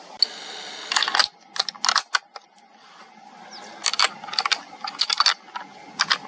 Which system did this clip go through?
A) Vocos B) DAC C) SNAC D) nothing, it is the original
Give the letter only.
D